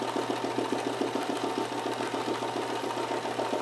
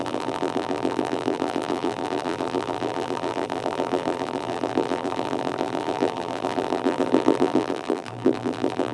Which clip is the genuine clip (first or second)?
first